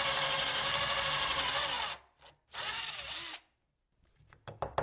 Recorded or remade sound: recorded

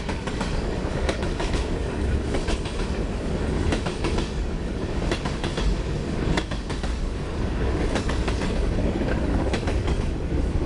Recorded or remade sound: remade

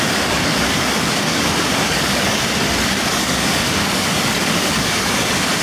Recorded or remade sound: remade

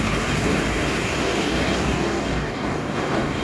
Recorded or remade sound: remade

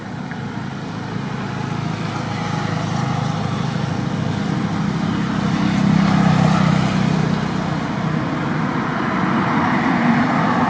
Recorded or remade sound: recorded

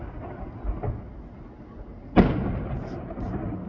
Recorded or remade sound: recorded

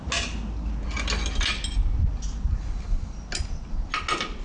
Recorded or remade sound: recorded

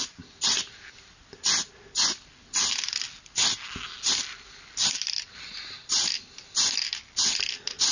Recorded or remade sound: recorded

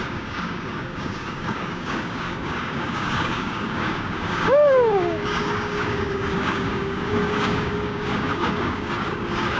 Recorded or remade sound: remade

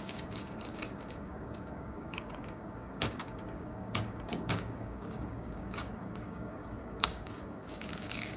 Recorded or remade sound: remade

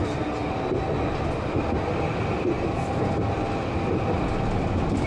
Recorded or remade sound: recorded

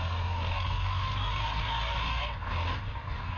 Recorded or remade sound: remade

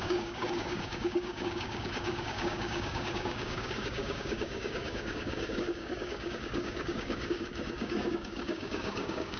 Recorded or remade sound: remade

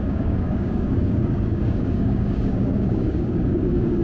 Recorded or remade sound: remade